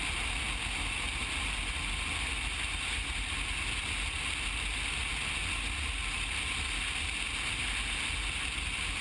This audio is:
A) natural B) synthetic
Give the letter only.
A